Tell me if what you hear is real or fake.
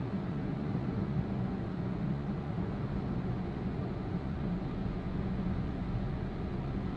fake